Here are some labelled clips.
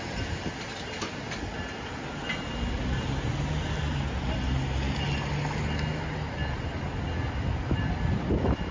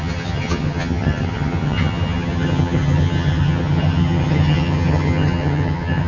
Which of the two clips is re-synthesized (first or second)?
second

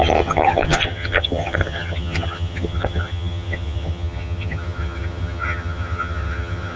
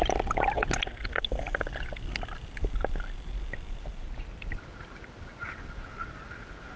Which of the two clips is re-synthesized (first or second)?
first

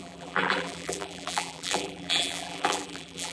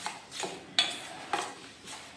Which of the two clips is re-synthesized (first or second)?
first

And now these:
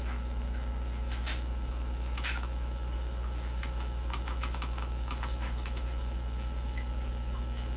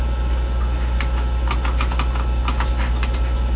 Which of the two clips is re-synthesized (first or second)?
first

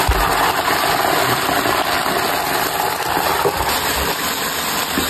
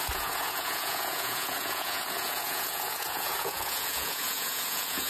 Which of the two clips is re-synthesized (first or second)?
second